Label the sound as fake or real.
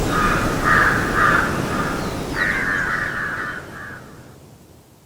real